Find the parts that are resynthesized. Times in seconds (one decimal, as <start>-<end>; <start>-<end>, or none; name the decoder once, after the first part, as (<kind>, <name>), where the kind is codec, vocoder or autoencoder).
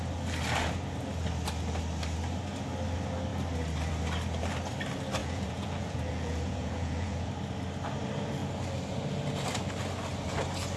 5.2-7.3 (vocoder, Vocos)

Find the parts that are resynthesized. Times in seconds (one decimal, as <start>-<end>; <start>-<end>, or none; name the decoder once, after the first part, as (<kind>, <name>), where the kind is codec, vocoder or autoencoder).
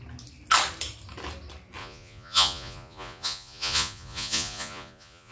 1.8-5.3 (vocoder, Vocos)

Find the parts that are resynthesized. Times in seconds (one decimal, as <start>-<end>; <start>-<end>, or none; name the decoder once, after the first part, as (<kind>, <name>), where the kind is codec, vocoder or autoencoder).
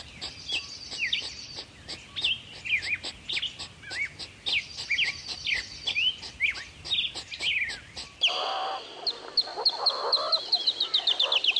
none